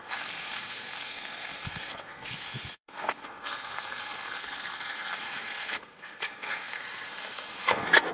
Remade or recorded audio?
remade